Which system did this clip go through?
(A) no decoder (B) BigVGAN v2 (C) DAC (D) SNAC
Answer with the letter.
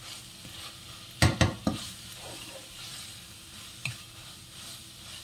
A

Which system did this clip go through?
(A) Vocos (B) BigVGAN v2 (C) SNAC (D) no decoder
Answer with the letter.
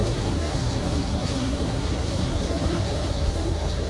C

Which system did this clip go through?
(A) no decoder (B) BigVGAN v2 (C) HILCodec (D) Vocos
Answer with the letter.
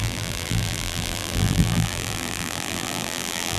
B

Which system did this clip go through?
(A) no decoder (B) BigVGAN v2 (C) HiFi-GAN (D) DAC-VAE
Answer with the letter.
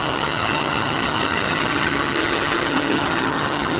C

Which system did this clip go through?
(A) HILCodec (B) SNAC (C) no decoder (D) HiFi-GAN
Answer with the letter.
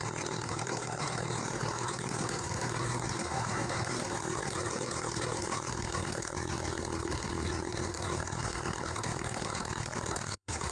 B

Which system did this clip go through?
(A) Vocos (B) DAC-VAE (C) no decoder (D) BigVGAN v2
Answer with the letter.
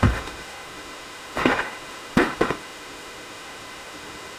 B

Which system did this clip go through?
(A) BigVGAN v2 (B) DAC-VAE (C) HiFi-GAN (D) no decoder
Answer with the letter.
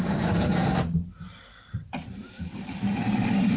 A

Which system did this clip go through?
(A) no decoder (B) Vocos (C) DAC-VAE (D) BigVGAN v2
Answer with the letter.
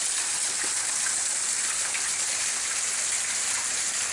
A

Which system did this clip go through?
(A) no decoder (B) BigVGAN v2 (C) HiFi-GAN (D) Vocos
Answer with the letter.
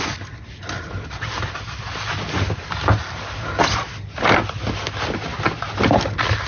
A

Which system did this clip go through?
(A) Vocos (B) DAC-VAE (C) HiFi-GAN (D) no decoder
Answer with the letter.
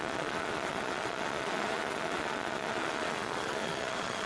A